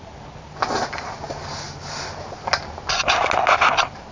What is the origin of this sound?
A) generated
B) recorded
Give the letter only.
B